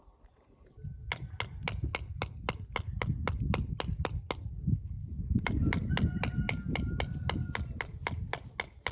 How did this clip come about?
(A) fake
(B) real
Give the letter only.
B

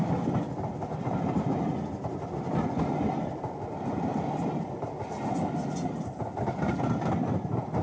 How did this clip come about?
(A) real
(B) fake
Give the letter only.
A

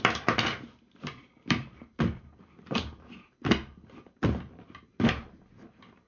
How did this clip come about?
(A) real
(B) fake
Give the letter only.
A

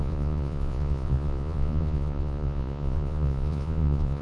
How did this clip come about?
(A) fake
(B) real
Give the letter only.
A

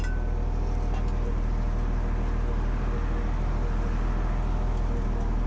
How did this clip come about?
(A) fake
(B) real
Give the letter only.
B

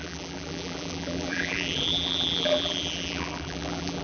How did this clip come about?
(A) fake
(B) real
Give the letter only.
A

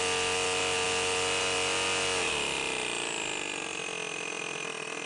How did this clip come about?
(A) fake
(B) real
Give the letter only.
B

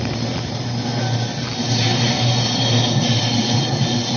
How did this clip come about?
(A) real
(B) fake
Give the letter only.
A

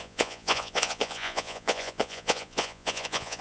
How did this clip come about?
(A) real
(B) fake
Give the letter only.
B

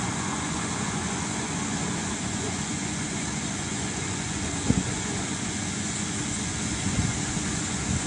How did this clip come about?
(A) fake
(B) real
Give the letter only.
A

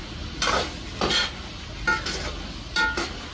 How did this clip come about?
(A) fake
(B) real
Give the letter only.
B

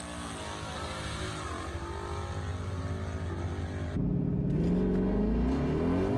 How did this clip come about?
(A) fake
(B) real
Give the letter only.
B